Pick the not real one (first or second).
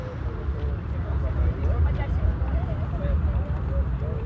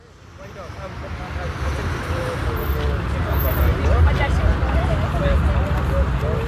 first